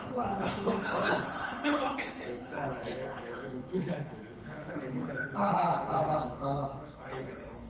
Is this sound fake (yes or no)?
yes